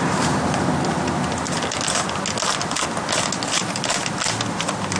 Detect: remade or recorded recorded